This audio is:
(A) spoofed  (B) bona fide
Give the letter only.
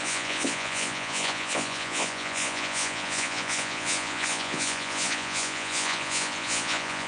A